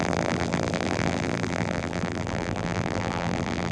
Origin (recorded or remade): remade